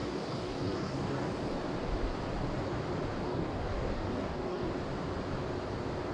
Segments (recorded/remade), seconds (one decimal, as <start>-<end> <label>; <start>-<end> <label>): 0.0-1.3 remade; 1.3-3.2 recorded; 3.2-4.7 remade; 4.7-6.1 recorded